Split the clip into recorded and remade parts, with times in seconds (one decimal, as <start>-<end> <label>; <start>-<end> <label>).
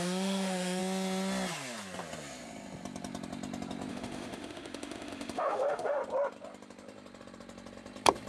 0.0-0.8 remade; 0.8-3.9 recorded; 3.9-6.0 remade; 6.0-8.3 recorded